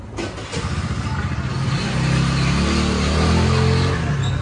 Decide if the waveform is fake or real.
real